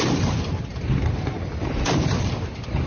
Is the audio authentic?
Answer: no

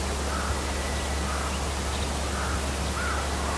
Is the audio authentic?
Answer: yes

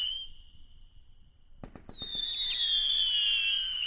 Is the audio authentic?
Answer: yes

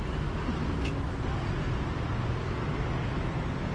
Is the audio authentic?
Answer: yes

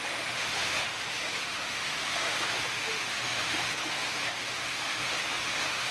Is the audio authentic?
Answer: no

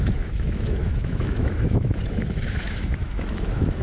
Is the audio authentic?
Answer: no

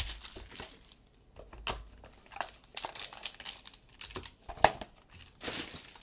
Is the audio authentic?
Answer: yes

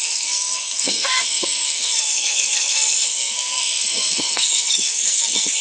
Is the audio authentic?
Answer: no